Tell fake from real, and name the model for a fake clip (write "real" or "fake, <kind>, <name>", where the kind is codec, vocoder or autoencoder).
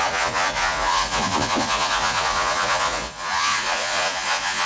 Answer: fake, vocoder, Vocos